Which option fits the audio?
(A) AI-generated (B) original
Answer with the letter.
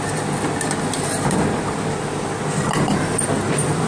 B